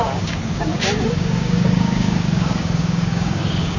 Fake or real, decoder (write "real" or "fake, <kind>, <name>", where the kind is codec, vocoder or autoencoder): fake, codec, DAC